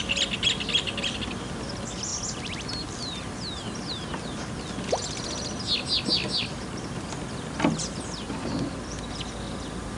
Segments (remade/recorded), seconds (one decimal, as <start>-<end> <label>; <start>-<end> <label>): 0.0-10.0 recorded